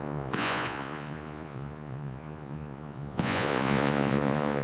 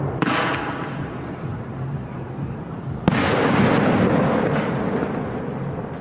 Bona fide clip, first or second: second